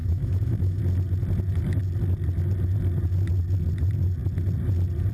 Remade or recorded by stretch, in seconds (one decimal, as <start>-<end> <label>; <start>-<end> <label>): 0.0-0.8 remade; 0.8-5.1 recorded